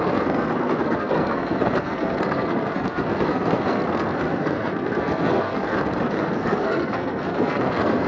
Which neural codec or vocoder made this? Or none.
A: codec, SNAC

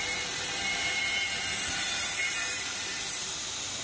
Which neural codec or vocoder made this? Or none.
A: vocoder, BigVGAN v2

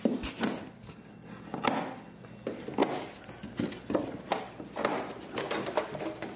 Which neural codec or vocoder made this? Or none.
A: none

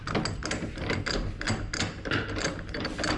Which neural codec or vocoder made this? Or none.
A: none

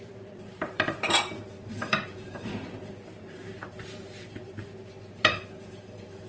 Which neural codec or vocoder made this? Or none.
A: vocoder, BigVGAN v2